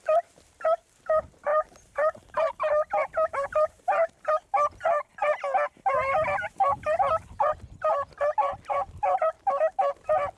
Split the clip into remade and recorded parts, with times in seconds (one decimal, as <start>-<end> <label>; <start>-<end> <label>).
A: 0.0-1.5 recorded; 1.5-2.5 remade; 2.5-3.3 recorded; 3.3-4.3 remade; 4.3-10.4 recorded